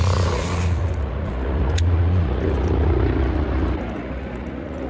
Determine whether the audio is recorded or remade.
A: remade